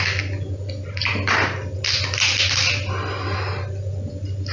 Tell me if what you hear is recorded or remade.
recorded